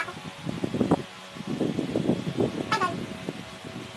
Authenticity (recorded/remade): recorded